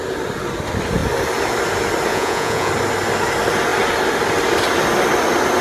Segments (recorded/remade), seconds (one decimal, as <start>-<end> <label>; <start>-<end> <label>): 0.0-2.1 recorded; 2.1-2.7 remade; 2.7-5.6 recorded